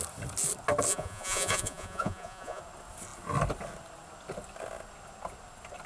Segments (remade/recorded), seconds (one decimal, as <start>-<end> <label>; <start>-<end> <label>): 0.0-0.9 recorded; 0.9-2.6 remade; 2.6-5.9 recorded